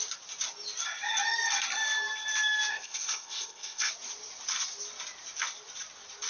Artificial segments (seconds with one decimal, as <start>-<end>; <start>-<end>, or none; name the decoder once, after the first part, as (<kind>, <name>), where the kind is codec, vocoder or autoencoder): 2.7-3.9 (codec, ZipCodec)